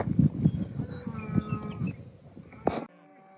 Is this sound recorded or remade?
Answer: recorded